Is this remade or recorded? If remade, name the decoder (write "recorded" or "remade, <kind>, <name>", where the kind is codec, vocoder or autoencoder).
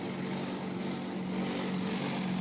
recorded